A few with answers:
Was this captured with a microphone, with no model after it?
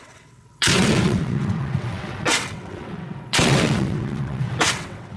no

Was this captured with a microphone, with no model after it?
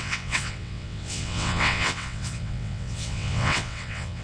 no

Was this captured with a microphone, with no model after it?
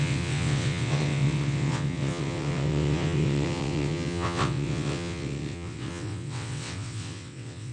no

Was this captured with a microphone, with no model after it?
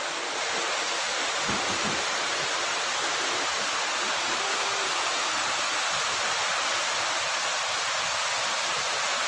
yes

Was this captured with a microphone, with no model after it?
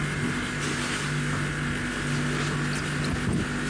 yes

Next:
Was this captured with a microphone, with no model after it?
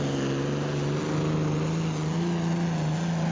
yes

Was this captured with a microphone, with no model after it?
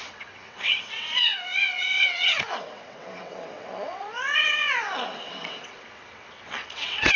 no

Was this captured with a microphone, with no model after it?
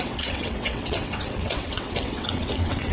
no